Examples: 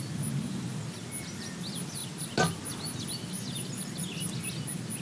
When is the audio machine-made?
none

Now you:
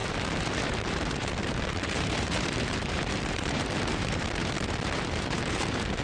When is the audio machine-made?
0.0-6.0 (vocoder, BigVGAN v2)

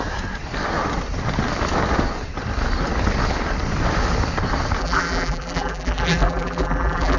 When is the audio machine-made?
4.8-7.2 (vocoder, BigVGAN v2)

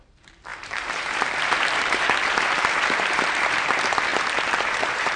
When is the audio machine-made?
0.0-5.2 (vocoder, BigVGAN v2)

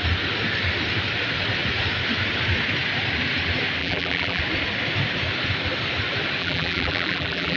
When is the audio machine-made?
3.8-4.4 (vocoder, BigVGAN v2); 6.4-7.6

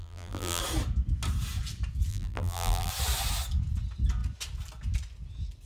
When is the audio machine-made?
0.0-0.6 (vocoder, BigVGAN v2); 2.1-2.9

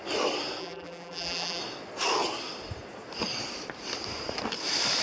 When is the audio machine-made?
0.6-1.6 (vocoder, BigVGAN v2)

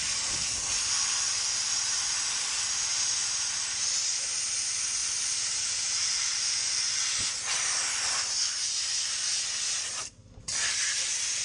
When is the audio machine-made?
5.0-6.1 (vocoder, BigVGAN v2); 10.2-11.4